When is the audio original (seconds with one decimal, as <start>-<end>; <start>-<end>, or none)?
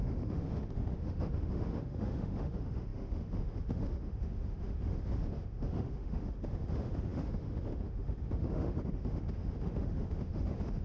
none